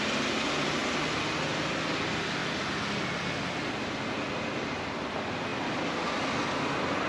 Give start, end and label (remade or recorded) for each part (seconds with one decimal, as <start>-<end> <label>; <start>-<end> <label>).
0.0-7.1 recorded